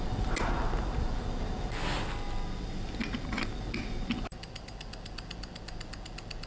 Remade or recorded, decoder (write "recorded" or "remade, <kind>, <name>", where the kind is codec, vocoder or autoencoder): recorded